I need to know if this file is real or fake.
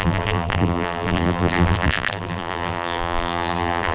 fake